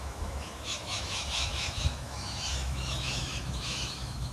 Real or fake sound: fake